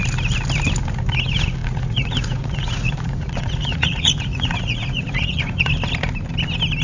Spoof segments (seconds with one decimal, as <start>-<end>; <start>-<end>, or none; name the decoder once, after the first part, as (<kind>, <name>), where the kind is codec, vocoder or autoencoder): 1.6-5.7 (vocoder, Vocos)